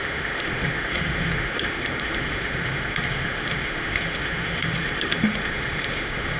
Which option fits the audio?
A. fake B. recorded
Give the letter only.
A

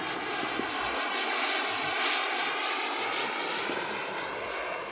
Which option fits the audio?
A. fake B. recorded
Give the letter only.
B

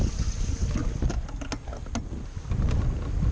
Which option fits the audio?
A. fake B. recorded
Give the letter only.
B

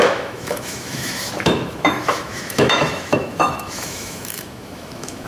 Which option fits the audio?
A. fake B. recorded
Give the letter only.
A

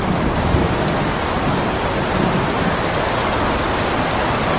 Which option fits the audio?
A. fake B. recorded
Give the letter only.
B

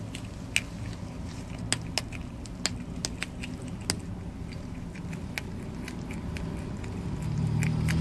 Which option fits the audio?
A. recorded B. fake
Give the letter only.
A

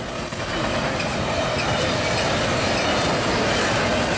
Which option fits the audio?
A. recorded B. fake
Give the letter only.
A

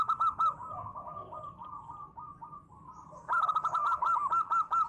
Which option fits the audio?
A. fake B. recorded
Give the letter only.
B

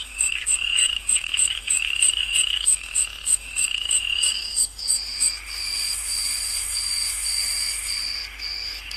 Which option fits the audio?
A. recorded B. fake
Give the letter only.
B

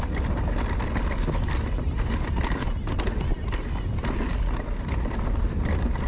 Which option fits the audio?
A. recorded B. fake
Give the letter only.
A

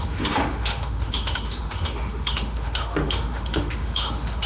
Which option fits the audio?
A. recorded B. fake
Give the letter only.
B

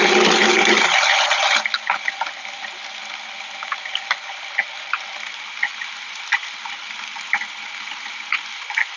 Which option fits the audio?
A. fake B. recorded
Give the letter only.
B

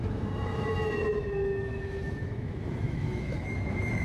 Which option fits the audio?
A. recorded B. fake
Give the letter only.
B